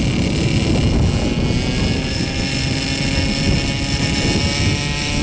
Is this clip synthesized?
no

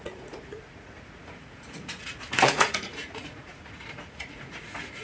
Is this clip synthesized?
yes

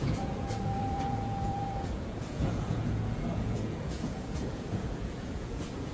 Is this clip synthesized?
yes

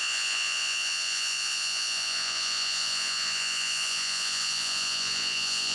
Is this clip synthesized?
yes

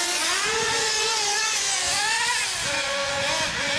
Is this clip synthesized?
yes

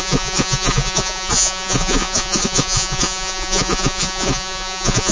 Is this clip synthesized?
yes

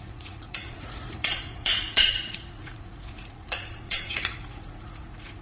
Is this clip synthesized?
yes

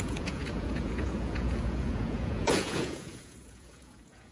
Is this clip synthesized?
yes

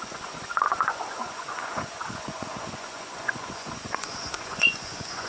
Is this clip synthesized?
yes